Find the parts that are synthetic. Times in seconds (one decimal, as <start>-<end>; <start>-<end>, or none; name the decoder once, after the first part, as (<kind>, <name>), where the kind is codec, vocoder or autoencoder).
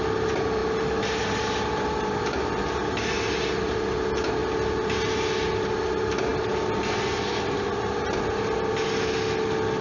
none